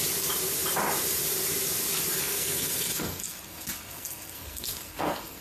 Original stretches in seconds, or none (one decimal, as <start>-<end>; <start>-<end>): 0.0-2.2